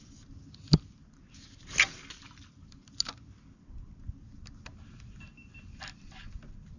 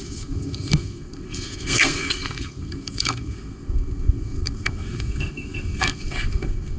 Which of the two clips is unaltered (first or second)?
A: first